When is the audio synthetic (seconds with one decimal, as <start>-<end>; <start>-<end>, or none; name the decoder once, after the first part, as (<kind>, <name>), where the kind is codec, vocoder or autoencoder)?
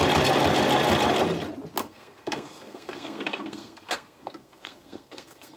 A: 1.8-5.6 (codec, SNAC)